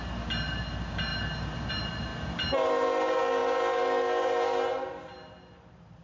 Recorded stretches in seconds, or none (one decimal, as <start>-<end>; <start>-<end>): 0.0-6.0